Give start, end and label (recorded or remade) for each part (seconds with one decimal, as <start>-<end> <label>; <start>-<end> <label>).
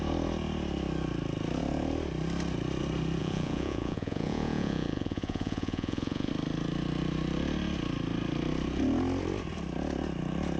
0.0-3.2 recorded; 3.2-6.3 remade; 6.3-10.6 recorded